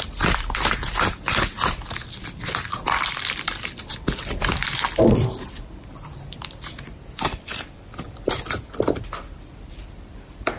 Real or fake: fake